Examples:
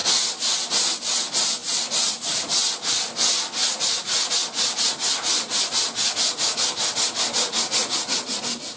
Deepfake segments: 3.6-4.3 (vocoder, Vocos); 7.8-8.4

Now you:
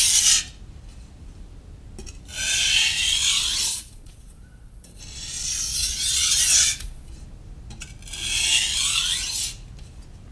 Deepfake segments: 3.7-5.0 (vocoder, Vocos); 5.8-7.1

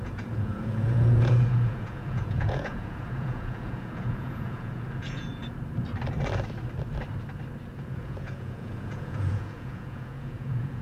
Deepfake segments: 0.0-5.4 (vocoder, Vocos); 7.7-10.8

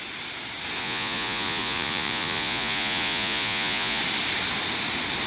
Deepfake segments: 0.8-4.0 (vocoder, Vocos)

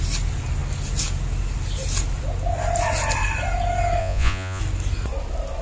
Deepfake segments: 4.0-4.6 (vocoder, Vocos)

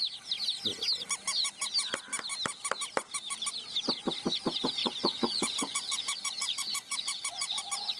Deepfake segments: 4.8-7.6 (vocoder, Vocos)

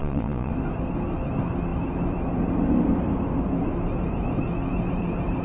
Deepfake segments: 0.0-0.5 (vocoder, Vocos)

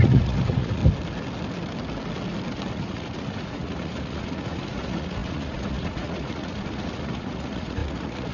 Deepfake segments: 0.0-0.8 (vocoder, Vocos); 2.7-8.3